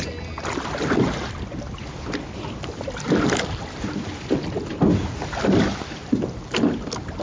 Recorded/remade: recorded